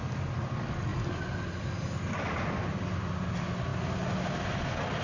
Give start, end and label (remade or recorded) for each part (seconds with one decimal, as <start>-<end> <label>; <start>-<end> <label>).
0.0-5.0 recorded